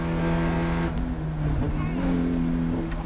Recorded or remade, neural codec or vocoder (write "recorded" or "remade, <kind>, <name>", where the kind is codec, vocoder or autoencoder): recorded